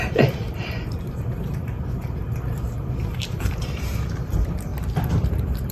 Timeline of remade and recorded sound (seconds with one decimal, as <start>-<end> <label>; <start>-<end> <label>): 0.0-2.2 remade; 2.2-3.0 recorded; 3.0-4.7 remade; 4.7-5.3 recorded; 5.3-5.7 remade